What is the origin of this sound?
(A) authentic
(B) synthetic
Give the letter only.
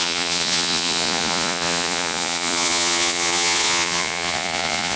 B